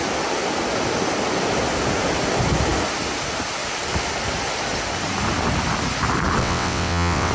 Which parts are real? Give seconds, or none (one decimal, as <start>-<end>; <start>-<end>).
0.0-6.4